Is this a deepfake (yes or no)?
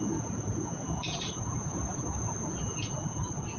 yes